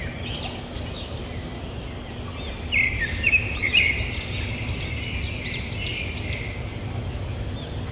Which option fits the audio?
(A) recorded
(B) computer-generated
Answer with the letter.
A